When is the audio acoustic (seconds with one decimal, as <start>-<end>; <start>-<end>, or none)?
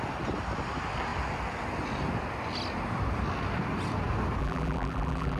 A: 0.0-4.4